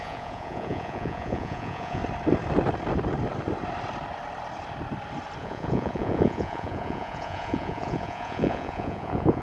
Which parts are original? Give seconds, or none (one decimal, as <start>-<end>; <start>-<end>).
2.0-5.4